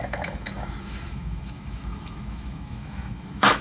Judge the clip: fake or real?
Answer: fake